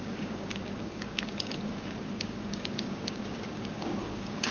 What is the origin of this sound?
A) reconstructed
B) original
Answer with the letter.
A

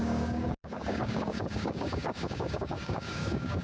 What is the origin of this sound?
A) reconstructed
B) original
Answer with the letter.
A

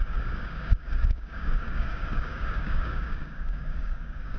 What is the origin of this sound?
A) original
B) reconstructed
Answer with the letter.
B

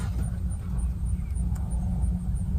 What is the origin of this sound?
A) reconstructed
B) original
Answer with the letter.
B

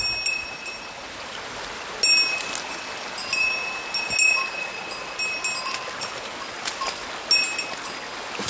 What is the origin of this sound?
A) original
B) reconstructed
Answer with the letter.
A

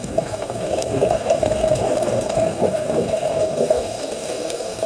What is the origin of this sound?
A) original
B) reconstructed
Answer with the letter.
B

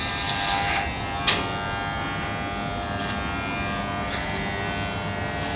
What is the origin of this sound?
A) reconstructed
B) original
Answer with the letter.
B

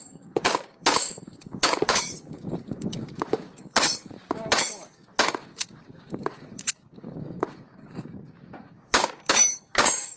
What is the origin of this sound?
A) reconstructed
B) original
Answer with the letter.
A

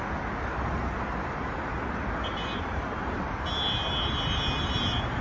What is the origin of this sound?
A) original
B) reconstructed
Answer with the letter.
A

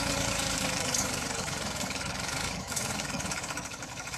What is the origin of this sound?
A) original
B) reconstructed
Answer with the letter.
B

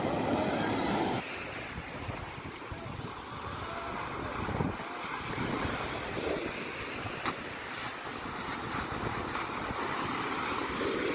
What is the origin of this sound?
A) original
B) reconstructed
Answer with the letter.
A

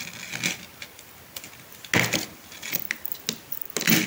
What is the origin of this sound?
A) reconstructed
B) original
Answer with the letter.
B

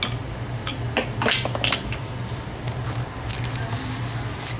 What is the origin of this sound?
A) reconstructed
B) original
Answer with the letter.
B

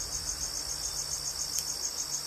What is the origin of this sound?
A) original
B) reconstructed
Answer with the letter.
A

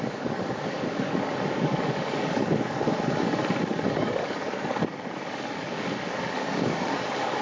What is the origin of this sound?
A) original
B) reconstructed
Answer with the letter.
B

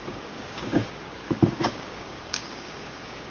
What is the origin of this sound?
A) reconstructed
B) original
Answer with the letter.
A